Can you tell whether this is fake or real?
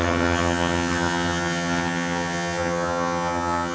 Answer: fake